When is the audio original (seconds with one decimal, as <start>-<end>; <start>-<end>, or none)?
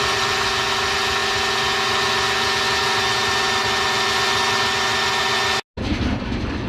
0.0-6.7